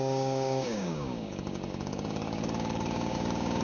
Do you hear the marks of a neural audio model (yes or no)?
yes